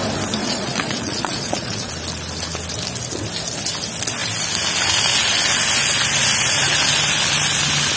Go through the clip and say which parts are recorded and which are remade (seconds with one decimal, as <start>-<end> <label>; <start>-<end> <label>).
0.0-0.4 recorded; 0.4-1.9 remade; 1.9-8.0 recorded